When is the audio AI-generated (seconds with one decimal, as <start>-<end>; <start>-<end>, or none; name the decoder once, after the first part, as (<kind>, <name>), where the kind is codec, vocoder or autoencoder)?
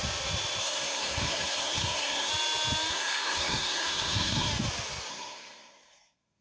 0.6-2.3 (codec, SNAC); 2.9-4.5; 5.1-6.4